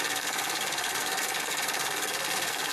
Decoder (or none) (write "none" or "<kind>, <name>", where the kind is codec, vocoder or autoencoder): codec, SNAC